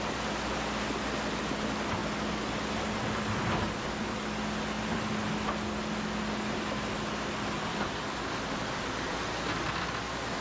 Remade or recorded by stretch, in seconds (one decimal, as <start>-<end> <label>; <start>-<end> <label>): 0.0-10.4 recorded